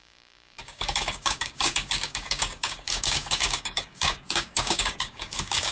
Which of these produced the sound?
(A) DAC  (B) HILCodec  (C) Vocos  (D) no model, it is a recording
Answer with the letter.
A